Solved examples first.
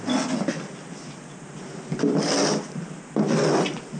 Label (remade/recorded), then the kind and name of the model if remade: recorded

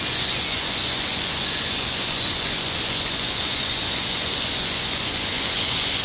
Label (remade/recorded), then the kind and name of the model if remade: remade, vocoder, Vocos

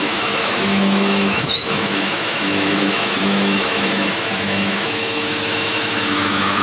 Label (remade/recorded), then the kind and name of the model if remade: remade, autoencoder, DAC-VAE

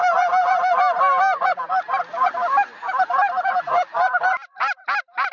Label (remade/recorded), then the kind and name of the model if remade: recorded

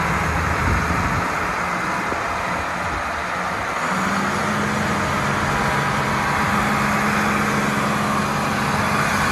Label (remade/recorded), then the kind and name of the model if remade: recorded